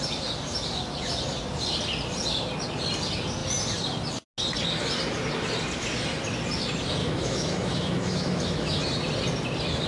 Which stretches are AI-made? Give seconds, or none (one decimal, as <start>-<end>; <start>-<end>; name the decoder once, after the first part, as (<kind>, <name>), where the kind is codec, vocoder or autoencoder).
7.0-8.8 (autoencoder, DAC-VAE)